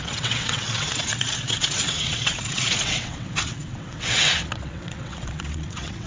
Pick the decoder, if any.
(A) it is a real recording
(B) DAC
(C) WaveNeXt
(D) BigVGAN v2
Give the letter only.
C